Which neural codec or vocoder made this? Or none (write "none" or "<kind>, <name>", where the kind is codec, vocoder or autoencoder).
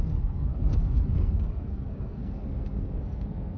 codec, SNAC